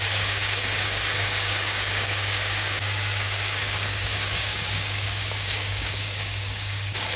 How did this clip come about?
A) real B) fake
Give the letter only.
B